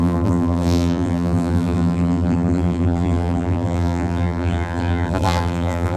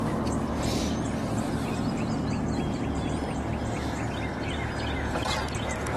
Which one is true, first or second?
second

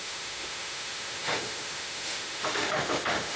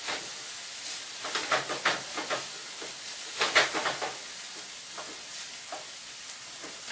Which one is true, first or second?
second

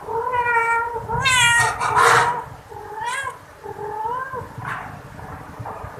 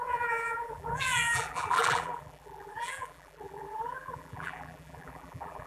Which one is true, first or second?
first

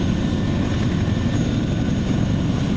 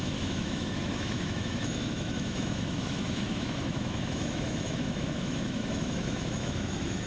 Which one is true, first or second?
first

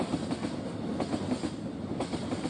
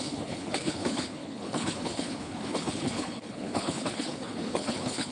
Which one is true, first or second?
first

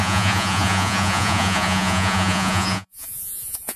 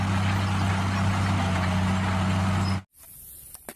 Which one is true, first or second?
second